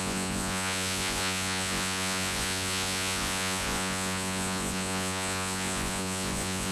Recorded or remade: remade